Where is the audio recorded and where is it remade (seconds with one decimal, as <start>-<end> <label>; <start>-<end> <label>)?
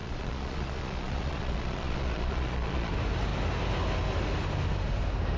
0.0-2.9 remade; 2.9-5.4 recorded